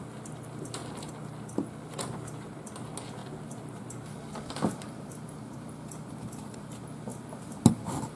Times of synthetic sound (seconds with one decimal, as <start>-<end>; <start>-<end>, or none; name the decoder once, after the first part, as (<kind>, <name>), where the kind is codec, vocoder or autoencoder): 3.2-6.6 (vocoder, BigVGAN v2)